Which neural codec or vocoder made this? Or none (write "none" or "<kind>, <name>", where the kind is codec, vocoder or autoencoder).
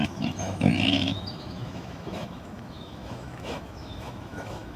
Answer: autoencoder, DAC-VAE